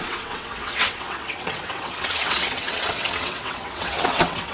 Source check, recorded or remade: remade